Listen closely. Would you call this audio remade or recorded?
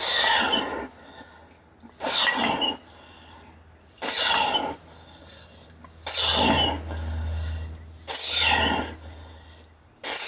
recorded